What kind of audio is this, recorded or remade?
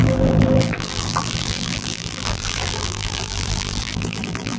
remade